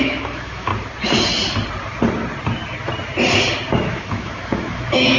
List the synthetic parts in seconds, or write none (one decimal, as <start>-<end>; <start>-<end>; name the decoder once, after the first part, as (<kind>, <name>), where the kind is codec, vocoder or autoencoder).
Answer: 0.0-0.7 (autoencoder, DAC-VAE); 3.8-5.2